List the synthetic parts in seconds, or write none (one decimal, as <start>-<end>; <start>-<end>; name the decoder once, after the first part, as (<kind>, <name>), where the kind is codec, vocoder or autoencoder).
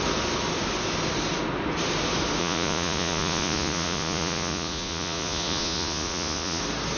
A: 2.4-6.6 (vocoder, Vocos)